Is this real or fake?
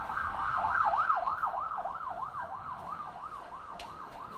fake